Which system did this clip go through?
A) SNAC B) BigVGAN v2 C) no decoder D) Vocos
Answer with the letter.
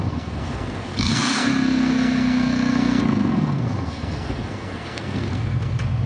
A